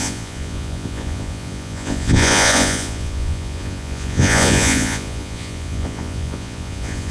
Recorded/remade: remade